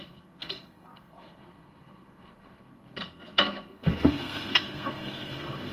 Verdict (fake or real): fake